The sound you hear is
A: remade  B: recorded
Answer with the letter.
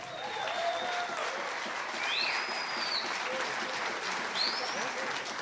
B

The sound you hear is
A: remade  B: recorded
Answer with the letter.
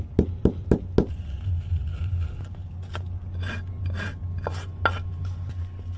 B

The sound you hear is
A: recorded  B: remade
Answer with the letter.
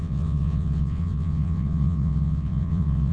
B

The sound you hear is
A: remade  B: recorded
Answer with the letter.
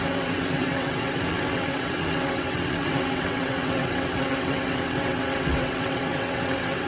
A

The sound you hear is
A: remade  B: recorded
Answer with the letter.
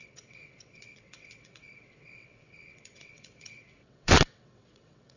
A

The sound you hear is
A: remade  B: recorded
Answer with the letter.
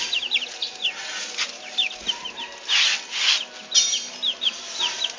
B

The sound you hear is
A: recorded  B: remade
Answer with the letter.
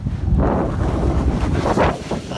A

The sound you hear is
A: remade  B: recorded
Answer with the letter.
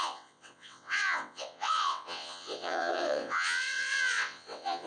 A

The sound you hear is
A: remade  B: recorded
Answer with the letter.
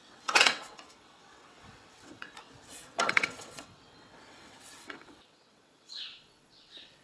A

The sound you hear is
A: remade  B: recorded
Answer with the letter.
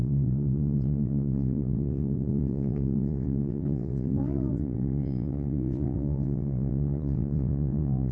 A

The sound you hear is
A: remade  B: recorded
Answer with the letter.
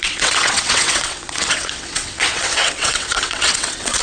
A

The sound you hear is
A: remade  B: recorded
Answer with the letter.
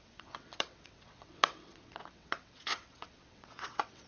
A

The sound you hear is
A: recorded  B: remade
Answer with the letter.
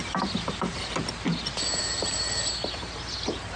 A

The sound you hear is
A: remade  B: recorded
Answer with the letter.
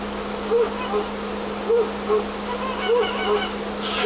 B